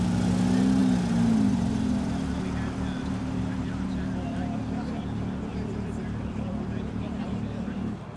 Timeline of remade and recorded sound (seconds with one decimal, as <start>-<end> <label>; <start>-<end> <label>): 0.0-5.5 recorded; 5.5-7.2 remade; 7.2-8.2 recorded